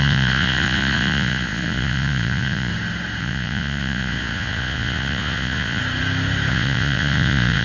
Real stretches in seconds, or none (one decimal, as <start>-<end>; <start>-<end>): 2.7-3.2; 5.8-6.5